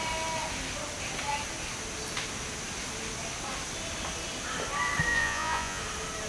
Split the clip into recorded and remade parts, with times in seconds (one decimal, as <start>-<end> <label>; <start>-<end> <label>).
0.0-5.1 recorded; 5.1-5.8 remade; 5.8-6.3 recorded